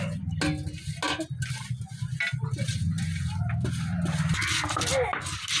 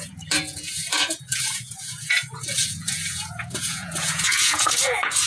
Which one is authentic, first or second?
first